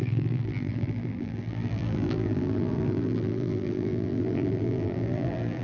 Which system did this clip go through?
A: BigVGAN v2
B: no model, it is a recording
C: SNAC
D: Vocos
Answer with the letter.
A